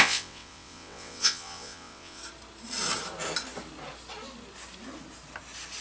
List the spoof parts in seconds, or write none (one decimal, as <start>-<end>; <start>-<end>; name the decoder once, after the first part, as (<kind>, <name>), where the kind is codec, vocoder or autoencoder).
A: 0.0-2.2 (vocoder, WaveNeXt)